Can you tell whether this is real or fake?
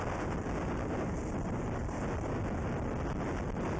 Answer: real